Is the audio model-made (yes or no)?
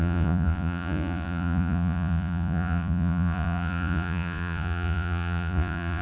yes